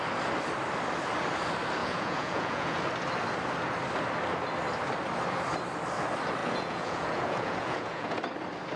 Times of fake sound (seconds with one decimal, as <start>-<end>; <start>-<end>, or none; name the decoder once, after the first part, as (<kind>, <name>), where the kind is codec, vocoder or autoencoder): 1.8-2.8 (vocoder, Vocos); 6.4-8.2